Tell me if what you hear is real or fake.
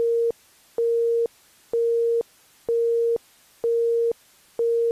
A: real